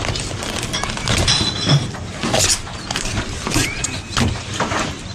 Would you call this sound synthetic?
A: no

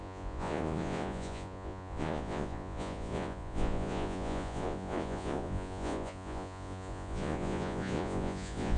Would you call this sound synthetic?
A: yes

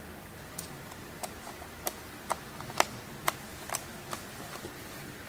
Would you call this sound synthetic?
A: no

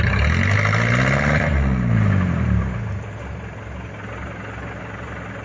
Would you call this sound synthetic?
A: no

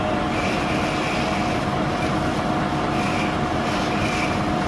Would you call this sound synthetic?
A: no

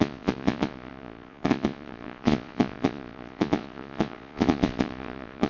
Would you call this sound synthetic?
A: yes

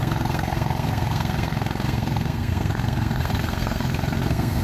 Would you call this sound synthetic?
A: yes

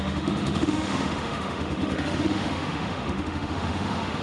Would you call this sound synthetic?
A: yes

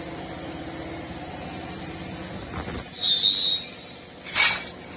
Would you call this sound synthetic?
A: no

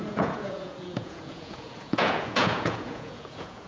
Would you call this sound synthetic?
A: yes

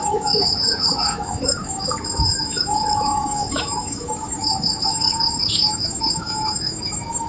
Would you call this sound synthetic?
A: yes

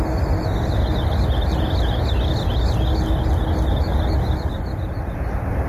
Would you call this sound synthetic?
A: no